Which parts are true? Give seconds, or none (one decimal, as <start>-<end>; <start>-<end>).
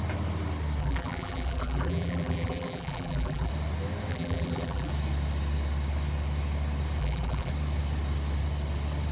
0.0-0.8; 3.5-4.1; 4.9-7.0; 7.5-9.1